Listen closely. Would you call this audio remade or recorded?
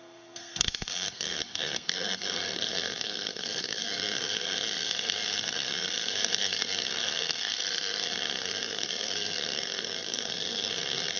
remade